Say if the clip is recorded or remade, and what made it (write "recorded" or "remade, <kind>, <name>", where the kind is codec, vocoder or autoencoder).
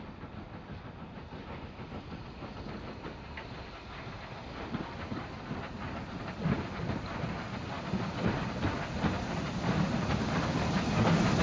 recorded